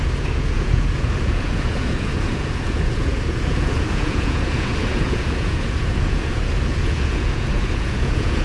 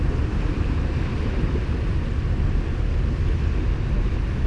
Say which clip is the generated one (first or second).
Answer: first